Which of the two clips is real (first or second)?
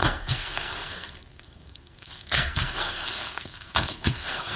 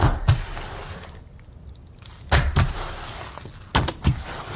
second